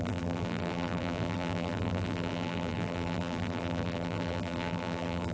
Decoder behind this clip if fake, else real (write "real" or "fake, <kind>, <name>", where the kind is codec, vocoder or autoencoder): fake, vocoder, BigVGAN v2